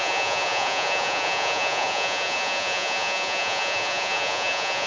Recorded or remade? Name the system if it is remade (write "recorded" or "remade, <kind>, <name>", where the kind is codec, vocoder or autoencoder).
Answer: remade, vocoder, Vocos